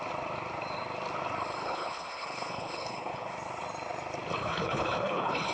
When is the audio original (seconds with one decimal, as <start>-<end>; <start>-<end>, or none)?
0.0-1.6; 3.3-4.4